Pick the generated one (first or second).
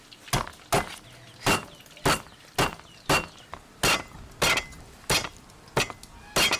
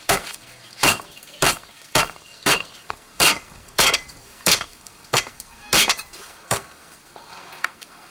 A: second